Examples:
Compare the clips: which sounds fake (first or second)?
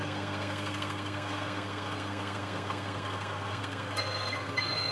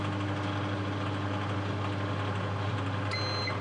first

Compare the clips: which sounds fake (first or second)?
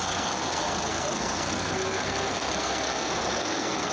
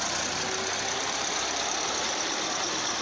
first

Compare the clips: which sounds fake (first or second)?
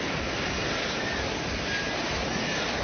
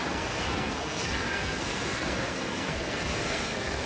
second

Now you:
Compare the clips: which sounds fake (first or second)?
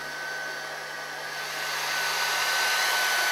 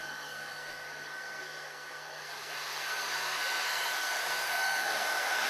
second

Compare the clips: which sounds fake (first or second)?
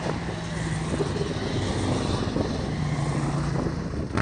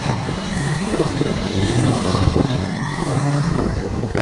second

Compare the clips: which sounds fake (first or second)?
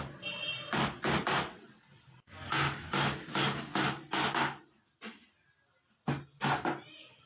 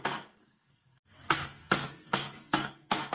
second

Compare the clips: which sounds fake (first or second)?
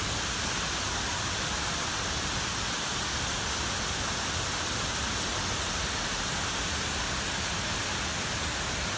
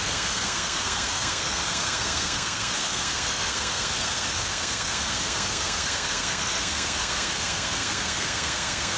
second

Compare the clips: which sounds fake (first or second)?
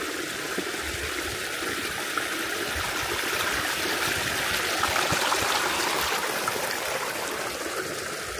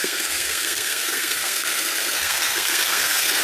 second